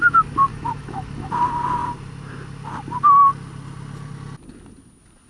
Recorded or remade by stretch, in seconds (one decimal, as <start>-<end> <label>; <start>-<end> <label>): 0.0-0.5 recorded; 0.5-1.3 remade; 1.3-5.3 recorded